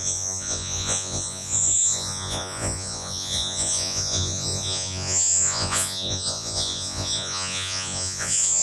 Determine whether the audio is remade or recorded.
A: remade